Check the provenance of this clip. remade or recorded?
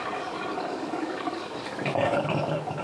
remade